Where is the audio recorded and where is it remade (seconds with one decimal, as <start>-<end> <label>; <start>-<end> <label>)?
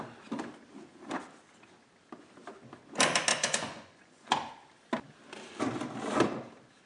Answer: 0.0-3.3 recorded; 3.3-4.5 remade; 4.5-6.9 recorded